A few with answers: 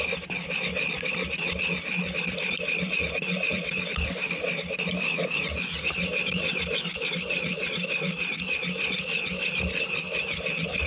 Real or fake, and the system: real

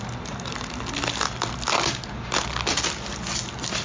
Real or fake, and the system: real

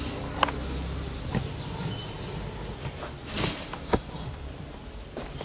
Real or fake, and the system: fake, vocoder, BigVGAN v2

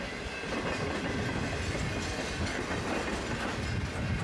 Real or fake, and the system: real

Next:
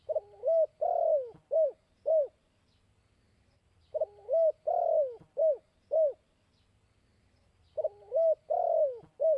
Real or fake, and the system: real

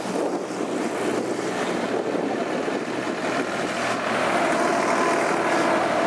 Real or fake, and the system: real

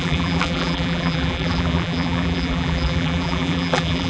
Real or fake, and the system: fake, vocoder, BigVGAN v2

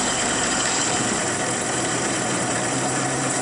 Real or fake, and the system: fake, vocoder, BigVGAN v2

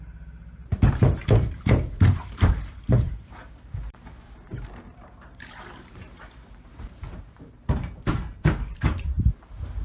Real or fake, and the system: fake, vocoder, BigVGAN v2